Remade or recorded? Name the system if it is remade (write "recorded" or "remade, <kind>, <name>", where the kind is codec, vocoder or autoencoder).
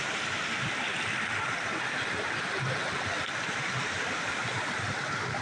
remade, vocoder, BigVGAN v2